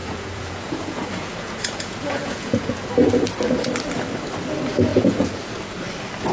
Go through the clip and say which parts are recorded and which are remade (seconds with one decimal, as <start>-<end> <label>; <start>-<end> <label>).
0.0-2.9 remade; 2.9-4.9 recorded; 4.9-5.4 remade; 5.4-6.3 recorded